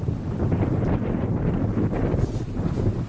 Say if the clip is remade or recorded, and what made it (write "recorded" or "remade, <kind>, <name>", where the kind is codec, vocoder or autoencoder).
remade, vocoder, BigVGAN v2